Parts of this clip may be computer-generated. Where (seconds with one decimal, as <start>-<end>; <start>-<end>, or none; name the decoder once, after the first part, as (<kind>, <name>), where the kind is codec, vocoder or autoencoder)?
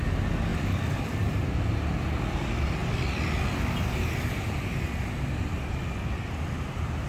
0.5-1.5 (vocoder, BigVGAN v2)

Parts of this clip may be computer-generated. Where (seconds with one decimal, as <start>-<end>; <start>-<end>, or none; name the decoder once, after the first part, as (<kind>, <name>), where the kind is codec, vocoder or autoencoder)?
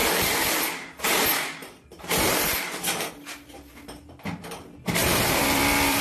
0.0-1.1 (vocoder, BigVGAN v2); 1.6-3.1; 5.0-6.0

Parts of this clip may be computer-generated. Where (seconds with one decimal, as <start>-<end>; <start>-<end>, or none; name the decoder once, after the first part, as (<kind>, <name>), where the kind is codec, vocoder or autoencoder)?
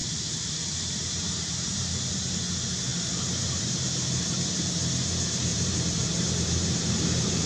0.0-2.1 (vocoder, BigVGAN v2); 2.9-4.7; 5.5-6.9